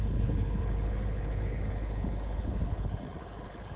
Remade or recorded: remade